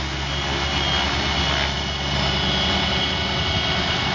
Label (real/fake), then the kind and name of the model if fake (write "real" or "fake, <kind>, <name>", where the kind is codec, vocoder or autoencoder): real